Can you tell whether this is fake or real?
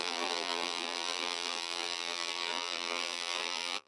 fake